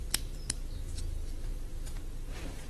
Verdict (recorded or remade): remade